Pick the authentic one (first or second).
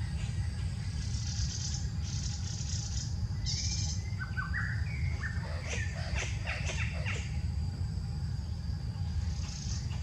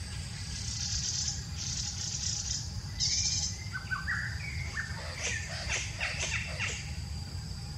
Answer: first